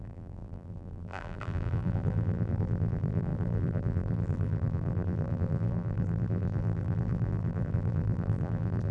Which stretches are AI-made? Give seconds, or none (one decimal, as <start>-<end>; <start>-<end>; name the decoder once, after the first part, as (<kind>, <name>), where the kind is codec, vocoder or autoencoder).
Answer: 0.0-8.9 (vocoder, BigVGAN v2)